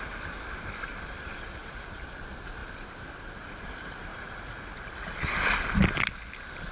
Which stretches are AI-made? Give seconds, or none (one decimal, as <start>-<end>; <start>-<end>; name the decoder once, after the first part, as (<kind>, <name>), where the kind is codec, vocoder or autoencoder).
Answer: 4.1-4.7 (vocoder, Vocos)